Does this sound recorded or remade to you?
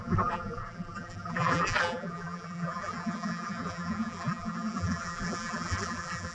remade